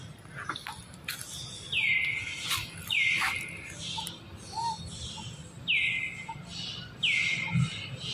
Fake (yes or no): no